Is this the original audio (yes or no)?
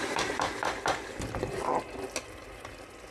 yes